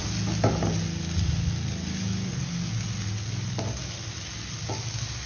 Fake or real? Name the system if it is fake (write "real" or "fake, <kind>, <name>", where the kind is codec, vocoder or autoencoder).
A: real